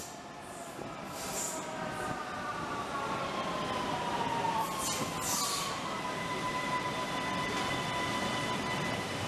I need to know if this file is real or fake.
real